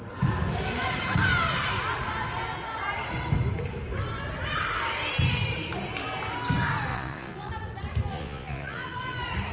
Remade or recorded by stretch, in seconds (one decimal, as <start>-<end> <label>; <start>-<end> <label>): 0.0-6.9 recorded; 6.9-7.5 remade; 7.5-8.1 recorded; 8.1-8.9 remade; 8.9-9.5 recorded